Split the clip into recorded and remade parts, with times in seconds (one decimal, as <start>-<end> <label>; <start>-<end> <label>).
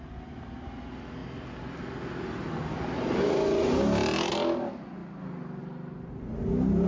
0.0-6.9 recorded